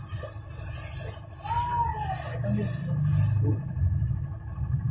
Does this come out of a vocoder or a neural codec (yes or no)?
no